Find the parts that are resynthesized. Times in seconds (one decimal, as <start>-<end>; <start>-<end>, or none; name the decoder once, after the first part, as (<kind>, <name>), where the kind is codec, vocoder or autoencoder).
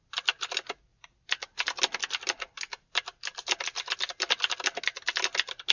0.9-3.6 (vocoder, BigVGAN v2)